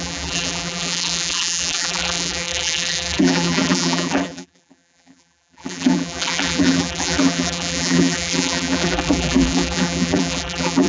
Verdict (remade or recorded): remade